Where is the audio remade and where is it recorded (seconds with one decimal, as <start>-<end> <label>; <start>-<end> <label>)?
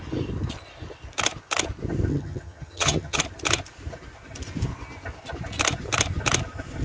0.0-2.1 recorded; 2.1-3.2 remade; 3.2-6.8 recorded